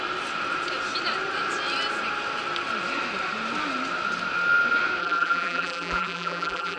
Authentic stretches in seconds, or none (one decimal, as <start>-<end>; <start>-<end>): 0.0-5.0